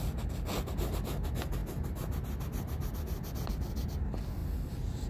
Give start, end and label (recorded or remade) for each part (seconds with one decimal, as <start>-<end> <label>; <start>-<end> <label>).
0.0-5.1 recorded

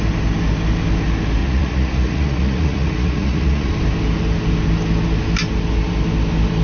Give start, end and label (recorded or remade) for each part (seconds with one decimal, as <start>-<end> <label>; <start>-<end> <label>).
0.0-1.4 recorded; 1.4-3.7 remade; 3.7-6.6 recorded

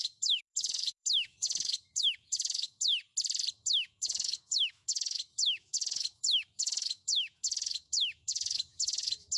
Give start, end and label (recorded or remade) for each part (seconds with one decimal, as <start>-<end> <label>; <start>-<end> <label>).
0.0-2.9 remade; 2.9-3.5 recorded; 3.5-9.4 remade

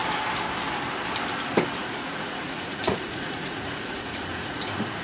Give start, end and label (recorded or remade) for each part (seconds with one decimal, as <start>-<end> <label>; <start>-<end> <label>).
0.0-1.8 recorded; 1.8-5.0 remade

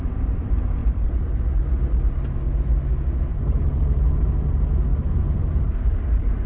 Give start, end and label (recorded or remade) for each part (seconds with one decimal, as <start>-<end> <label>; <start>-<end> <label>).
0.0-0.8 recorded; 0.8-1.6 remade; 1.6-3.3 recorded; 3.3-4.1 remade; 4.1-4.9 recorded; 4.9-6.5 remade